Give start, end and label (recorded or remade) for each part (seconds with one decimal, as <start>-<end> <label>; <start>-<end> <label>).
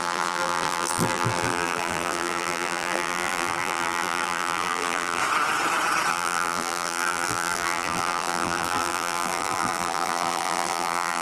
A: 0.0-5.2 remade; 5.2-6.1 recorded; 6.1-11.2 remade